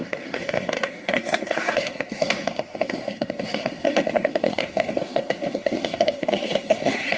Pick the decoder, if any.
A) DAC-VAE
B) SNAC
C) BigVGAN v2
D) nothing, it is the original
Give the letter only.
B